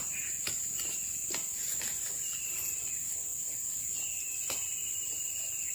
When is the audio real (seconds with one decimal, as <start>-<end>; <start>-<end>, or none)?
0.0-5.7